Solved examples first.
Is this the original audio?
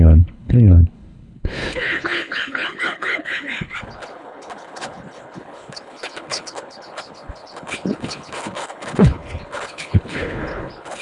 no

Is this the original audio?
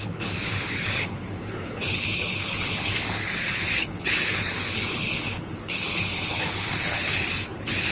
no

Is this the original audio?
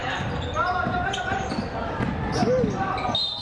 yes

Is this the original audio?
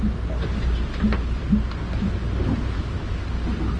yes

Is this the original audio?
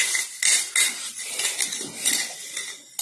yes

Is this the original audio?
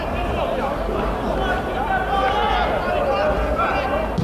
yes